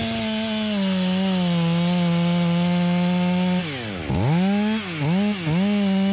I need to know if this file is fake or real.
real